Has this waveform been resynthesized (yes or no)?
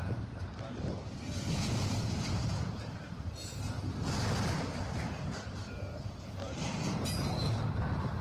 no